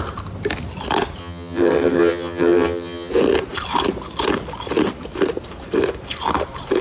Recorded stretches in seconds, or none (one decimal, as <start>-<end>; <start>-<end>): 0.0-1.2; 3.1-6.8